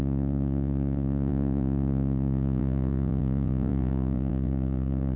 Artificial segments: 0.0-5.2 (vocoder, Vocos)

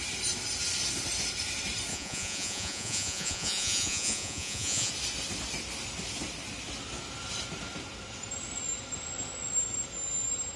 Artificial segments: 1.9-4.9 (vocoder, Vocos)

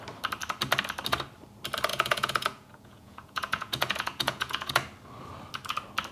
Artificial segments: 1.9-4.7 (vocoder, Vocos)